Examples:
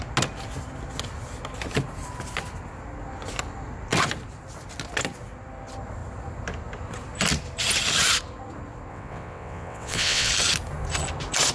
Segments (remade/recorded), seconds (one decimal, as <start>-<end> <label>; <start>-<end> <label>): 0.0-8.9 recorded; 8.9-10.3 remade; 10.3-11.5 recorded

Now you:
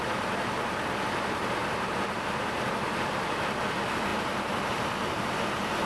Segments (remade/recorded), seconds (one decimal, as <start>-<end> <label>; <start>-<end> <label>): 0.0-5.9 remade

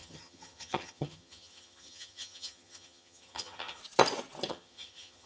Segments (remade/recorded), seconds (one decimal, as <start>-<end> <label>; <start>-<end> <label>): 0.0-3.8 remade; 3.8-4.5 recorded; 4.5-5.3 remade

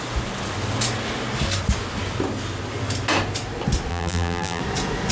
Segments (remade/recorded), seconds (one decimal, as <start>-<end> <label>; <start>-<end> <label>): 0.0-3.9 recorded; 3.9-4.6 remade; 4.6-5.1 recorded

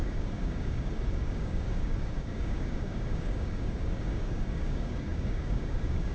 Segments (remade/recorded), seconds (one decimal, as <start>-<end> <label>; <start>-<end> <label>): 0.0-6.1 remade